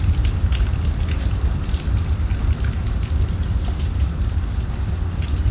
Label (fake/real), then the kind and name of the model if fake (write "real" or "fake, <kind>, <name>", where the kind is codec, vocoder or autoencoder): real